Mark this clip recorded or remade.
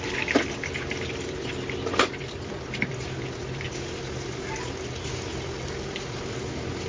recorded